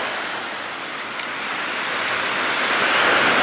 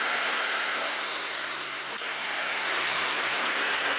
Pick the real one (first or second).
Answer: first